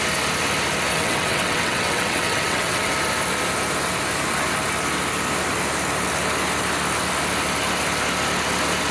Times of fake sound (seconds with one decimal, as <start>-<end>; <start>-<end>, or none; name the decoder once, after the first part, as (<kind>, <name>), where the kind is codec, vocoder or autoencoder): 0.9-2.9 (vocoder, WaveNeXt)